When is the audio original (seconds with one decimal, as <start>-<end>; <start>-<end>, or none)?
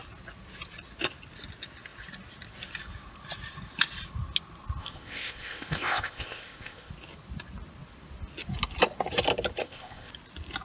0.0-4.8; 6.9-9.6; 10.1-10.6